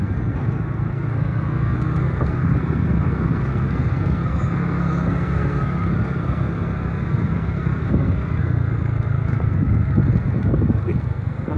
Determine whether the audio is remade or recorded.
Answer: remade